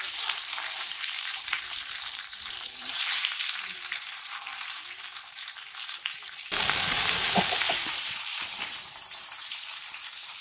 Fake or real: fake